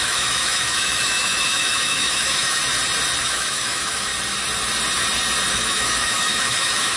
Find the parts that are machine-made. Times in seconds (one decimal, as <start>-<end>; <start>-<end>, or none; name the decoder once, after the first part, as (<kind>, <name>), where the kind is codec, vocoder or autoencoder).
0.0-2.6 (autoencoder, DAC-VAE); 3.2-4.1; 5.5-7.0